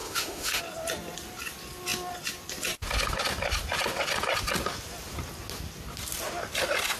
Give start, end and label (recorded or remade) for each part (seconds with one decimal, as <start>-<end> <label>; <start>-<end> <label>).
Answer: 0.0-0.6 remade; 0.6-7.0 recorded